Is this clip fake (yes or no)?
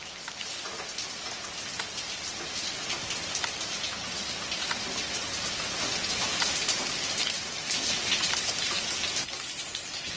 no